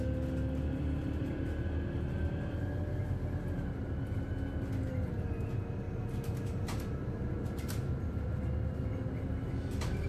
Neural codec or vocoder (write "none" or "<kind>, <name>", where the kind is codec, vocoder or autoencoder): none